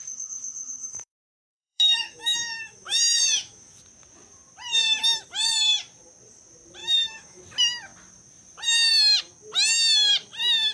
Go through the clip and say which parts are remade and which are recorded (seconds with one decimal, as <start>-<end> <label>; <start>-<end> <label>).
0.0-0.8 recorded; 0.8-3.8 remade; 3.8-6.8 recorded; 6.8-7.4 remade; 7.4-10.7 recorded